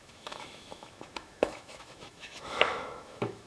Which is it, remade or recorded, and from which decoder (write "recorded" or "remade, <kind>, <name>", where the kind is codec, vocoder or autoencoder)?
remade, autoencoder, DAC-VAE